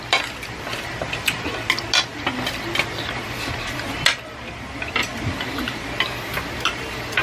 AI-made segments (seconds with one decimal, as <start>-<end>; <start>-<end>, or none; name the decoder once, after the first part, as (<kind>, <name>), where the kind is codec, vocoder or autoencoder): none